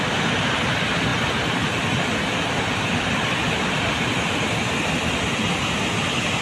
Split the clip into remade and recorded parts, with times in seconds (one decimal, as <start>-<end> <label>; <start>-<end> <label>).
0.0-6.4 recorded